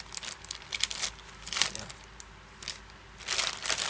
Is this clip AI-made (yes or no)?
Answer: no